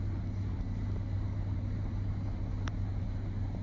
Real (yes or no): yes